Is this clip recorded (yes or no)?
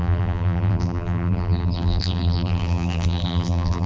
no